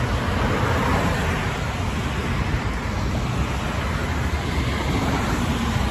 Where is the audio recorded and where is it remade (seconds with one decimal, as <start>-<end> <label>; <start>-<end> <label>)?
0.0-4.0 recorded; 4.0-5.4 remade; 5.4-5.9 recorded